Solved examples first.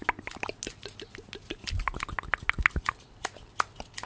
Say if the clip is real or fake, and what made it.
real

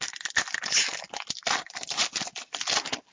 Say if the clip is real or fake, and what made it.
real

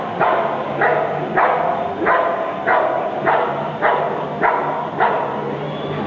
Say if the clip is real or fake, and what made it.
real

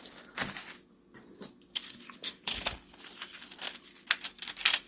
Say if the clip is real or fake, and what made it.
real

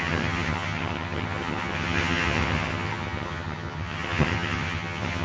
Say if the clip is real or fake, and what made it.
fake, vocoder, HiFi-GAN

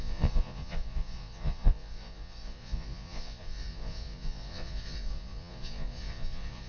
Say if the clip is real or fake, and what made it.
fake, vocoder, Vocos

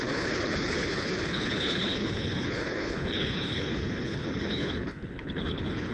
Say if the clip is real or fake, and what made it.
fake, codec, HILCodec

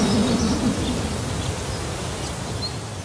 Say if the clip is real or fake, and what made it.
real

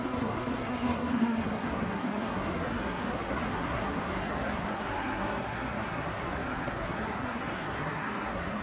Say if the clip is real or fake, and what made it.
fake, codec, SNAC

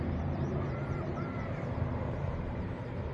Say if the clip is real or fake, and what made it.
fake, vocoder, BigVGAN v2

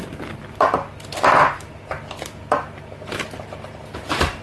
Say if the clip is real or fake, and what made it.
fake, vocoder, BigVGAN v2